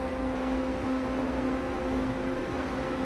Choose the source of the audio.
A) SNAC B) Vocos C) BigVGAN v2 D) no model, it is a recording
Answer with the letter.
A